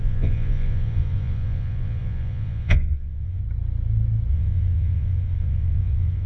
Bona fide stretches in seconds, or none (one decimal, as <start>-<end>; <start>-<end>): 3.4-4.3